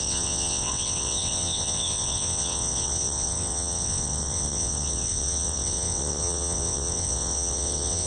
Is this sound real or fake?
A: fake